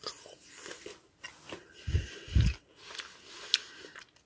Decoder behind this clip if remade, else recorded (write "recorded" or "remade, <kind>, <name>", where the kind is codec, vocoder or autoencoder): recorded